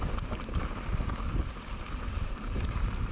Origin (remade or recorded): remade